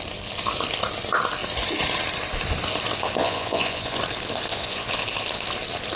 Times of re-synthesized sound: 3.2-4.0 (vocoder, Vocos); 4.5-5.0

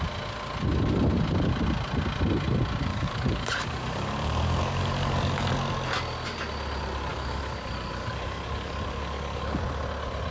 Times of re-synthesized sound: 2.9-5.5 (codec, DAC); 7.1-9.6

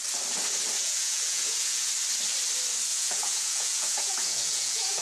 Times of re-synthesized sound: 0.8-1.9 (vocoder, Vocos); 2.9-5.0

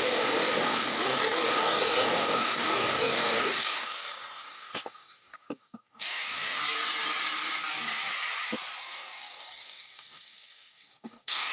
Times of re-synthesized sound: 0.0-6.6 (codec, DAC); 8.8-11.5

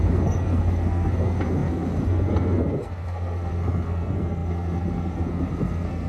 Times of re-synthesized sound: 0.0-6.1 (codec, SNAC)

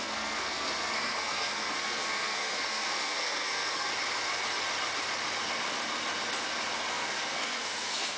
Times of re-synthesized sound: 0.0-3.9 (codec, SNAC); 6.9-8.2

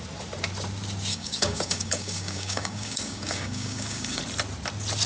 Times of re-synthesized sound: 1.1-4.2 (codec, DAC)

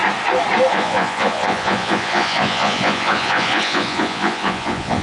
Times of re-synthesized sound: 0.7-5.0 (vocoder, Vocos)